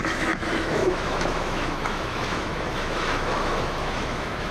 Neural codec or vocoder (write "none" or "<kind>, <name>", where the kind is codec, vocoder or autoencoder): autoencoder, DAC-VAE